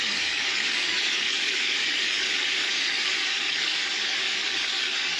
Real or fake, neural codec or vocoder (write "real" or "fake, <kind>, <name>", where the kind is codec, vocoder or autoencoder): fake, codec, DAC